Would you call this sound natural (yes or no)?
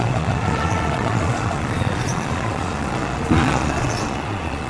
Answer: no